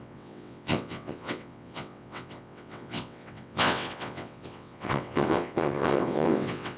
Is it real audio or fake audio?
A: fake